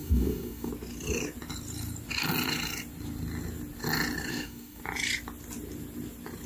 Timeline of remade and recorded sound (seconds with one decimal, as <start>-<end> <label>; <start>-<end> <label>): 0.0-0.7 remade; 0.7-4.3 recorded; 4.3-4.8 remade; 4.8-6.5 recorded